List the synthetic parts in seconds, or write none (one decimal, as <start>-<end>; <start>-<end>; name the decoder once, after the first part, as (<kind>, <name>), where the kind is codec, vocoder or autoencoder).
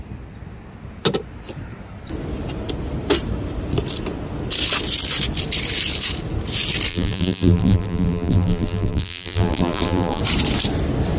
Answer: 6.9-10.2 (vocoder, BigVGAN v2)